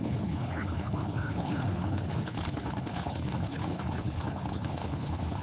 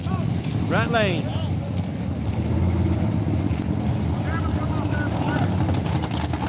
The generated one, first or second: first